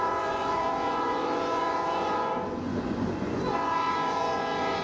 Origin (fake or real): fake